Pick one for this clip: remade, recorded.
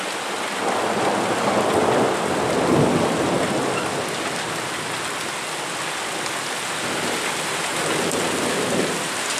recorded